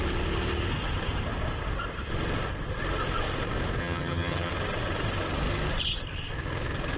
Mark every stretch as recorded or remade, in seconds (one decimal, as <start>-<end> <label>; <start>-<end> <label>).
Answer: 0.0-3.8 recorded; 3.8-4.5 remade; 4.5-7.0 recorded